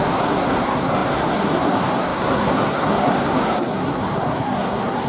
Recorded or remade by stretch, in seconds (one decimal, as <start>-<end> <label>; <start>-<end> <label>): 0.0-5.1 remade